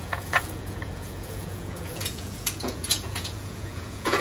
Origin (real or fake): fake